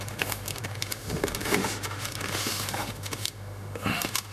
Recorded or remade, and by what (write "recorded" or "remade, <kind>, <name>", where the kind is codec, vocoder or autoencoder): remade, autoencoder, DAC-VAE